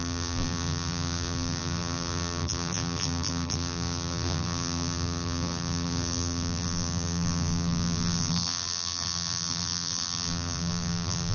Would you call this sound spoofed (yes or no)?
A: yes